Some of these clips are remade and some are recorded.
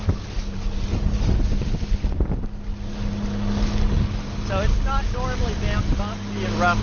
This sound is recorded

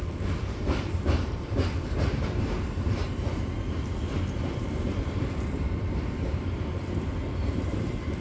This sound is remade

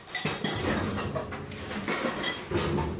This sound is recorded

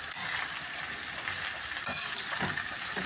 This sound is recorded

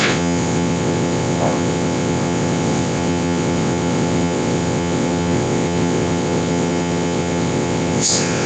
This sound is remade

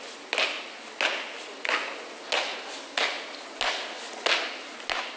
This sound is recorded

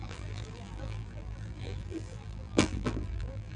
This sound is remade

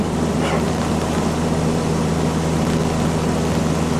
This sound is recorded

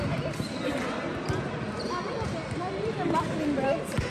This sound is recorded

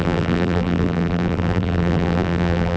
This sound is remade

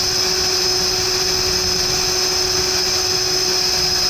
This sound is recorded